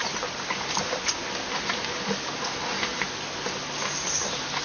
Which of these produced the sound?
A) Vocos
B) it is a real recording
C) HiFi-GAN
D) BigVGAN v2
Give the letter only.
B